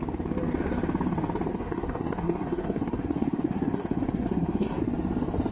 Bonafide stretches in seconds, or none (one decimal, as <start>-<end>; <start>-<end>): 0.0-1.5; 4.8-5.5